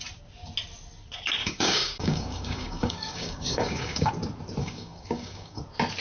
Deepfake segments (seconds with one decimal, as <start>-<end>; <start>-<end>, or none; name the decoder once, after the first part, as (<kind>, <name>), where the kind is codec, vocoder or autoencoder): 1.4-4.1 (codec, DAC); 4.6-5.6